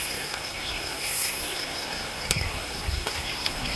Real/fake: fake